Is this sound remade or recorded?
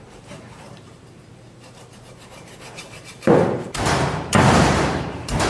remade